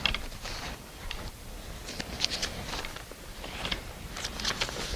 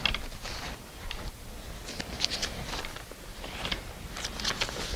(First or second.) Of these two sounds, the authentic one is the second